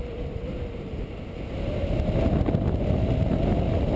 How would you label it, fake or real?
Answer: real